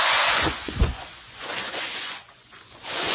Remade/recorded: remade